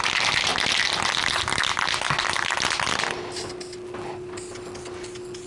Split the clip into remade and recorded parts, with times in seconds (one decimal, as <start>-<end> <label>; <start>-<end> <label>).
0.0-5.5 recorded